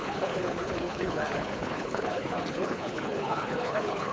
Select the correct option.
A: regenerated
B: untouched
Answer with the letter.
A